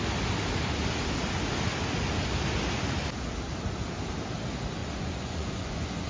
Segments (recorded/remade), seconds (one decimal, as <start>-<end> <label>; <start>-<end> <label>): 0.0-4.8 recorded; 4.8-6.1 remade

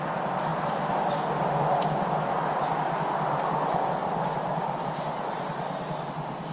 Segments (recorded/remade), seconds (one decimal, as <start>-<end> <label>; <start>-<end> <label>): 0.0-6.5 recorded

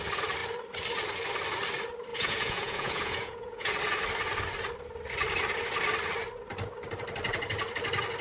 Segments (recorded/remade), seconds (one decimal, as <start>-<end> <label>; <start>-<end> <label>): 0.0-2.1 recorded; 2.1-3.7 remade; 3.7-8.2 recorded

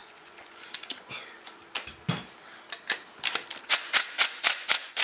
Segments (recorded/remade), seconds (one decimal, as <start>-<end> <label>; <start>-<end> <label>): 0.0-1.6 remade; 1.6-3.6 recorded; 3.6-5.0 remade

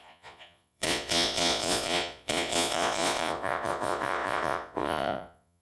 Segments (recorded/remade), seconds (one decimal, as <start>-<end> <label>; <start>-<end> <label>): 0.0-5.6 remade